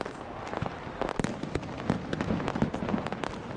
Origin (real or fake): real